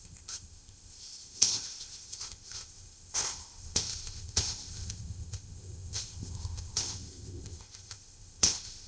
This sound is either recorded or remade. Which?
remade